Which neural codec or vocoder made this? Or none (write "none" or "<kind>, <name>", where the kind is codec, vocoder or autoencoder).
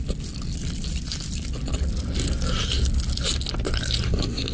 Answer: none